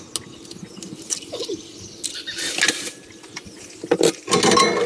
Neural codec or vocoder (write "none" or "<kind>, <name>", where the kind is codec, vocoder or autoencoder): none